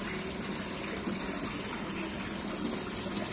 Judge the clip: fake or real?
real